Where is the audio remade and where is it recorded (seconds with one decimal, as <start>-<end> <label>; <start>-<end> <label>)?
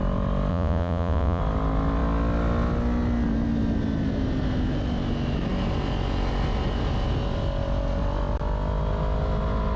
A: 0.0-0.5 recorded; 0.5-1.4 remade; 1.4-9.8 recorded